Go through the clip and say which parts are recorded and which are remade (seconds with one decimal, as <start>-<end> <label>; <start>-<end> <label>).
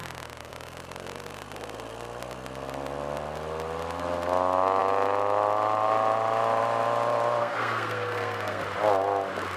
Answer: 0.0-7.4 recorded; 7.4-8.6 remade; 8.6-9.6 recorded